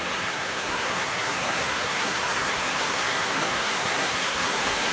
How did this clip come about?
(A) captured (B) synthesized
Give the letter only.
B